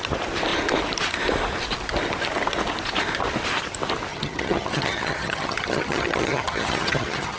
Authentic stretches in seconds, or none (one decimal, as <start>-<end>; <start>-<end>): 0.0-4.1